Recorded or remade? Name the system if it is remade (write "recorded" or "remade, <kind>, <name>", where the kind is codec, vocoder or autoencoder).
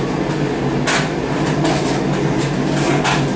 recorded